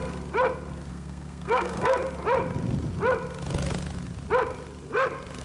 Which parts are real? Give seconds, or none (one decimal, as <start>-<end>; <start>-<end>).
0.0-0.9; 2.0-5.4